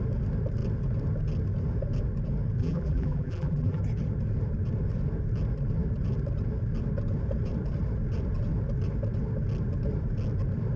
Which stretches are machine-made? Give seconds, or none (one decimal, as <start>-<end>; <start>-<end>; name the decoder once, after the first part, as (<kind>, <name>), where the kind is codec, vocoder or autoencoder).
2.6-3.8 (vocoder, BigVGAN v2)